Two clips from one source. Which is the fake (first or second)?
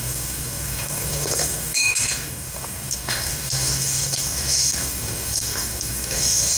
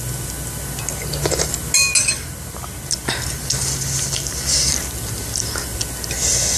first